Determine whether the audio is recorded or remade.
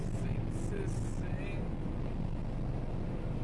recorded